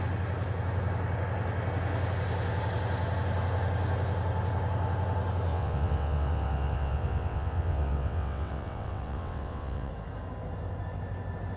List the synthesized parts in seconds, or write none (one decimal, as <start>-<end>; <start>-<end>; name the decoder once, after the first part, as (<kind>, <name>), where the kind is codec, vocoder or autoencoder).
5.5-9.9 (vocoder, WaveNeXt)